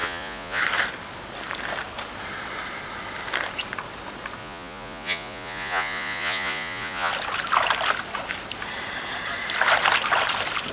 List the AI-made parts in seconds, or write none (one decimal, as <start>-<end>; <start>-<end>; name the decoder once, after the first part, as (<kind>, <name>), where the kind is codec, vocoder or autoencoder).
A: 0.0-0.6 (vocoder, Vocos); 4.4-7.1